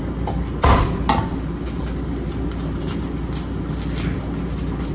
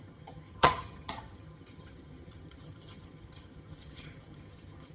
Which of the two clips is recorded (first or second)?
first